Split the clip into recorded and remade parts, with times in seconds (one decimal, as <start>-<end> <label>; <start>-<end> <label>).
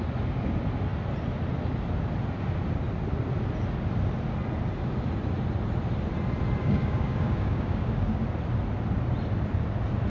0.0-6.6 recorded; 6.6-8.2 remade; 8.2-10.1 recorded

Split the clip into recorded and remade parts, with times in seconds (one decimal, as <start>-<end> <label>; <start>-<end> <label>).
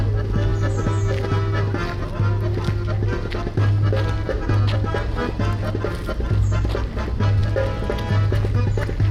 0.0-9.1 recorded